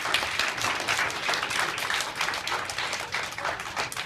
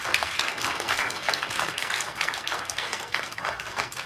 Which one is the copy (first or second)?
second